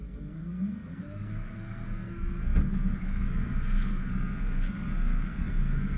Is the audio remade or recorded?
remade